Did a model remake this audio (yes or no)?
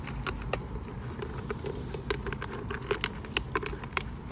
no